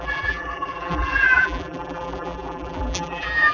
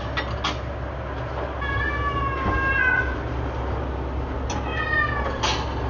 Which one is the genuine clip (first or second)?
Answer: second